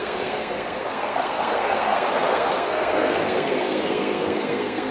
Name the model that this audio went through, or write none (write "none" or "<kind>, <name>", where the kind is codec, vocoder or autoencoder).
codec, SNAC